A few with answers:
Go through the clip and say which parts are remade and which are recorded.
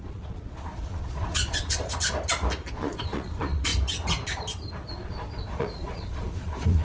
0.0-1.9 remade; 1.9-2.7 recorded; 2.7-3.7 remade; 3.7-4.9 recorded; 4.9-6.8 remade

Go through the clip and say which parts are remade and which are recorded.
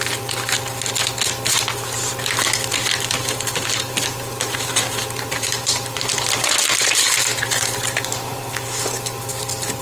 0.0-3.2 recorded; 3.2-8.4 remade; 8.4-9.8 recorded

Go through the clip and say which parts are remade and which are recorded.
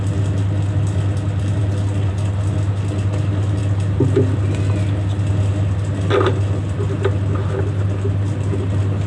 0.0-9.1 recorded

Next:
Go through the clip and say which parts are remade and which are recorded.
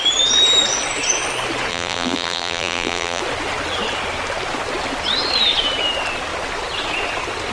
0.0-1.7 recorded; 1.7-3.2 remade; 3.2-7.5 recorded